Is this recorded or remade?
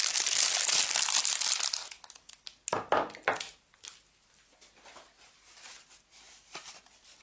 recorded